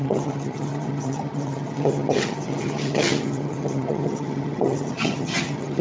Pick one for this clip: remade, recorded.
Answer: remade